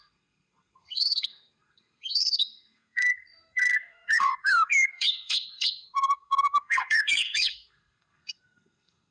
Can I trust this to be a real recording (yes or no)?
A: no